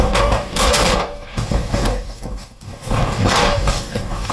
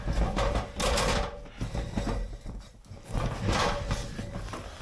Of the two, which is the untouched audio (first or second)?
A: second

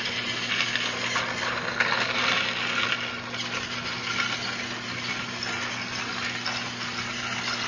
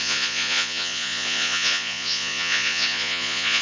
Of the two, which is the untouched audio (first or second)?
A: first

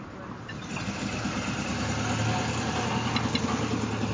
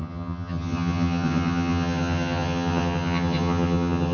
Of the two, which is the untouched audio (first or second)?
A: first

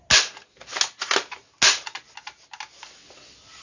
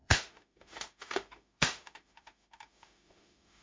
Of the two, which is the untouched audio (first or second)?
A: first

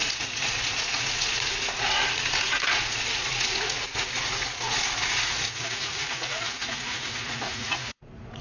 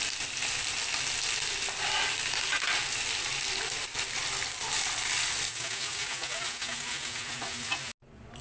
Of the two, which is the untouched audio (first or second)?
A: second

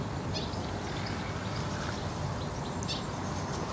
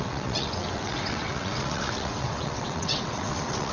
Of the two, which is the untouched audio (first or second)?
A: first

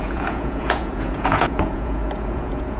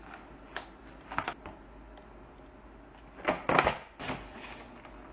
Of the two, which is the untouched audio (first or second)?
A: second